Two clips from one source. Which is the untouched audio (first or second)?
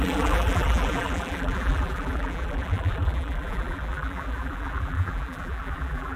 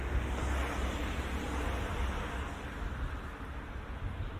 second